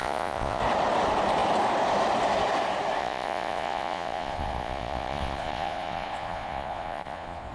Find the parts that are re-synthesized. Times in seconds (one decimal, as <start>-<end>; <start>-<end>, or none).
0.0-0.6; 3.0-7.5